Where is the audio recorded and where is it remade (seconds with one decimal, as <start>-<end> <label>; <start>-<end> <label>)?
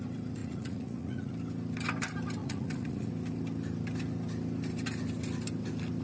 0.0-0.4 recorded; 0.4-1.3 remade; 1.3-2.4 recorded; 2.4-3.1 remade; 3.1-6.0 recorded